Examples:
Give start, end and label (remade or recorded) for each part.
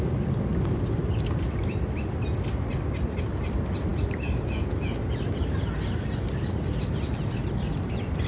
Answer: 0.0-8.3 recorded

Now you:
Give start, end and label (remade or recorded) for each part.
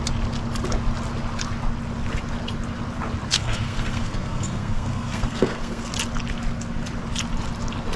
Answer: 0.0-3.3 recorded; 3.3-5.9 remade; 5.9-8.0 recorded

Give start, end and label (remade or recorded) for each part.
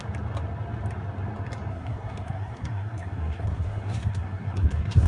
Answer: 0.0-1.7 recorded; 1.7-5.1 remade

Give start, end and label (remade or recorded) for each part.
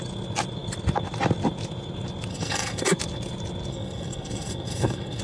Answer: 0.0-2.3 recorded; 2.3-2.8 remade; 2.8-3.7 recorded; 3.7-5.2 remade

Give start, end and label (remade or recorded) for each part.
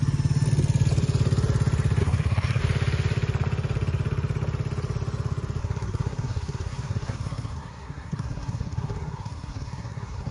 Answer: 0.0-2.0 recorded; 2.0-2.6 remade; 2.6-5.6 recorded; 5.6-10.3 remade